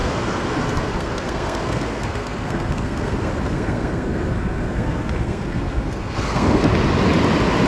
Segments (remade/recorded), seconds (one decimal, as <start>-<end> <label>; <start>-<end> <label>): 0.0-6.7 remade; 6.7-7.7 recorded